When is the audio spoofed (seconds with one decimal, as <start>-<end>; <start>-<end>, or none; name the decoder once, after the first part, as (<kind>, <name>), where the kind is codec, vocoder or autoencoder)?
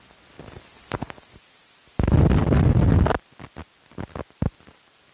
none